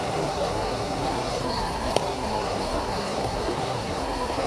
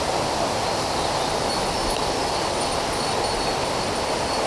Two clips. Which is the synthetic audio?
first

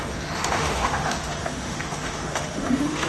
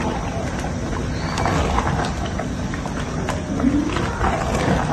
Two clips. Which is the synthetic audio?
first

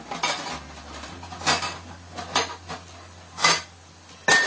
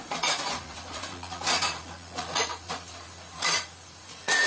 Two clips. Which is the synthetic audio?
second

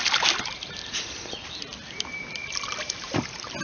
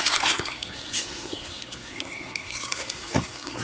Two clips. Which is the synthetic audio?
second